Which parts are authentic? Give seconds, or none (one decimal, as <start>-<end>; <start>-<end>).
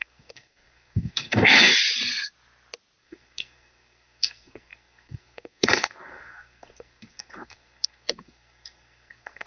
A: 1.7-3.0